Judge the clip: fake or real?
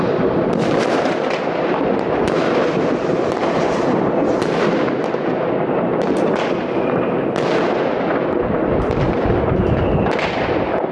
real